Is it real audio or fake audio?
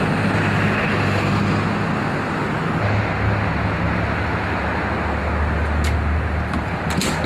real